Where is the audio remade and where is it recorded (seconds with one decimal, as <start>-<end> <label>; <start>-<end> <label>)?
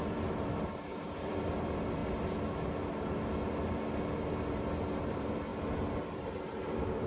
0.0-2.0 remade; 2.0-5.1 recorded; 5.1-5.5 remade; 5.5-6.0 recorded; 6.0-7.1 remade